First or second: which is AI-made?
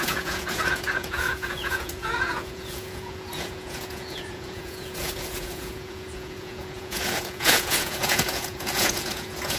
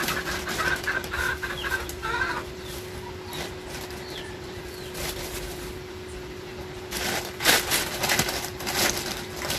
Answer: first